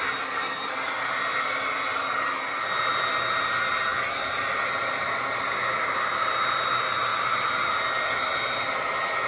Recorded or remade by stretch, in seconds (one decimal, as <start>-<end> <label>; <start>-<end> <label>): 0.0-3.9 recorded; 3.9-4.4 remade; 4.4-9.3 recorded